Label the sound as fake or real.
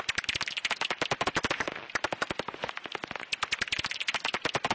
real